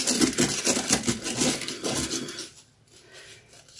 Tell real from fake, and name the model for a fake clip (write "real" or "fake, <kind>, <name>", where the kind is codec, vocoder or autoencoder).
real